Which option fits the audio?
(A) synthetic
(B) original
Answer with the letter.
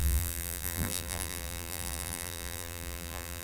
A